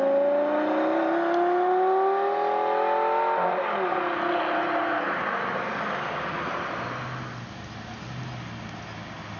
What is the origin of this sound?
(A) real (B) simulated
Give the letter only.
A